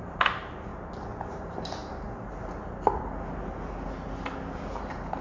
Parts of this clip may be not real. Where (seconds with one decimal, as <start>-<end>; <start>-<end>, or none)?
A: 0.0-0.7; 1.3-1.8; 4.7-5.2